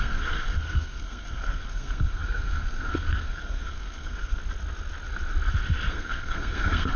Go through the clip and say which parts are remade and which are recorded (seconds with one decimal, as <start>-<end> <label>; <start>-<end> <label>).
0.0-4.4 remade; 4.4-5.9 recorded; 5.9-7.0 remade